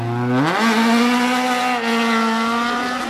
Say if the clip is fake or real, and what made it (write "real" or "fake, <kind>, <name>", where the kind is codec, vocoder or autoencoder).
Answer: real